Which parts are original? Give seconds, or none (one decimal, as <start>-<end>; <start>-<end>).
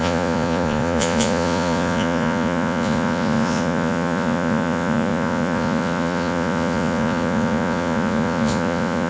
none